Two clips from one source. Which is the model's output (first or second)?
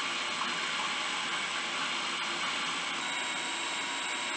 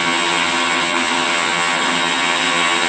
second